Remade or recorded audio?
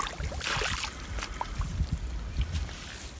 recorded